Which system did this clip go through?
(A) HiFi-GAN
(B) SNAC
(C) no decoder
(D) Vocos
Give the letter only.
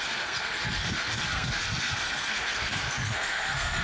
B